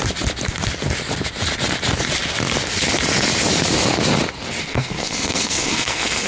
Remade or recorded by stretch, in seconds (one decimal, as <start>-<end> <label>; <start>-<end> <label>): 0.0-4.7 recorded; 4.7-6.3 remade